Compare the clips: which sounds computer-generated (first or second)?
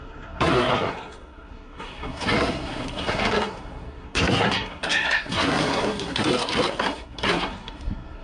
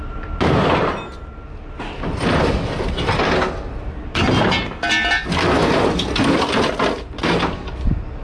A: first